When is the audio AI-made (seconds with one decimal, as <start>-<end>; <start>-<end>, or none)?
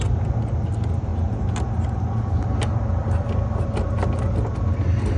none